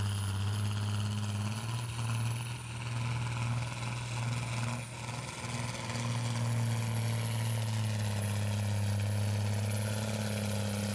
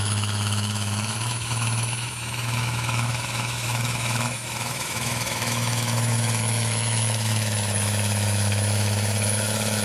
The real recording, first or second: first